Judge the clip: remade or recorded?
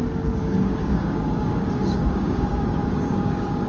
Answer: remade